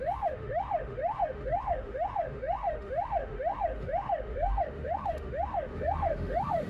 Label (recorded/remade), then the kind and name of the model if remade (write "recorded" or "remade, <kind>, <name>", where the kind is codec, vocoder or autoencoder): remade, autoencoder, DAC-VAE